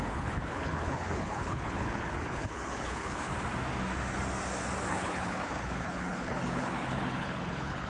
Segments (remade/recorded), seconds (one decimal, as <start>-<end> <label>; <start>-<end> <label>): 0.0-3.3 remade; 3.3-4.9 recorded; 4.9-7.9 remade